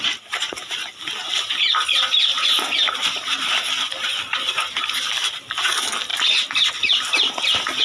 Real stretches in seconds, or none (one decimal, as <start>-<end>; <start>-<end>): 0.0-7.8